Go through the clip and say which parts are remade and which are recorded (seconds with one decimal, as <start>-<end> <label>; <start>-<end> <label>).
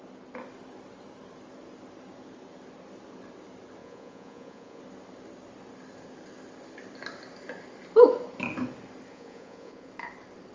0.0-3.8 recorded; 3.8-4.8 remade; 4.8-9.1 recorded; 9.1-9.9 remade; 9.9-10.5 recorded